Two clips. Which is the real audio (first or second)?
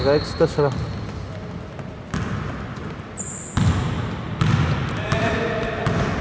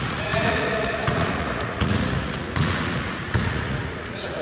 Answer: first